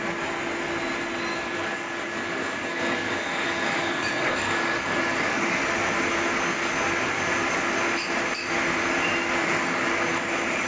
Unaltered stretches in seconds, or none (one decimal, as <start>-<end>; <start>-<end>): 0.0-1.3; 5.6-9.4; 10.0-10.7